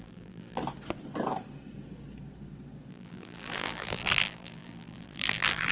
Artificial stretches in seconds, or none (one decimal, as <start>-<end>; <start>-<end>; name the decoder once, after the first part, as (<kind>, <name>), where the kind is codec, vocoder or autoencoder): 0.0-0.6 (vocoder, BigVGAN v2); 2.9-5.7